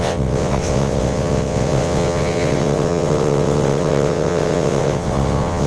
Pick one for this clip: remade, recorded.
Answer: remade